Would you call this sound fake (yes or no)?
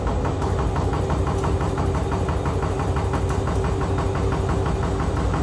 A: no